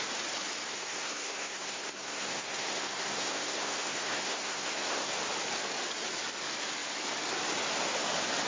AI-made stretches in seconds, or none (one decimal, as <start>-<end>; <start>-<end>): 0.7-5.1